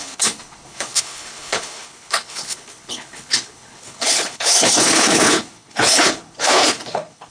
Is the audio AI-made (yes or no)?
yes